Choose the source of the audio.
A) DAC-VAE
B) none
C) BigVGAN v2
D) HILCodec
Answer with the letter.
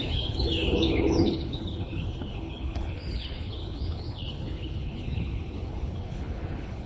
D